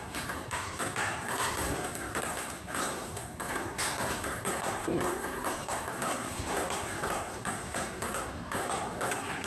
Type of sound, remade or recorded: remade